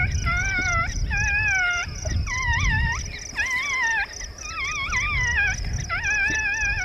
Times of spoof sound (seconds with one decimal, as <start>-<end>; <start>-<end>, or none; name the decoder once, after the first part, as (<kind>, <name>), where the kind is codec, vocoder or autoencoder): 0.4-1.0 (vocoder, BigVGAN v2); 1.8-3.0